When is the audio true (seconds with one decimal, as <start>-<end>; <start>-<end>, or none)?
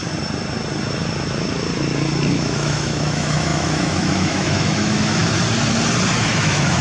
0.0-2.3; 5.2-6.3